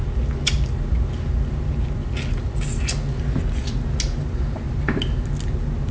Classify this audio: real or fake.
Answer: real